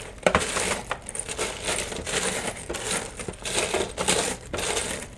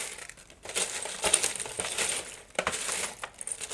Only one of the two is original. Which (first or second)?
second